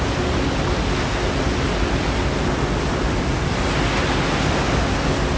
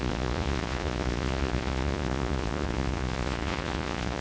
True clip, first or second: first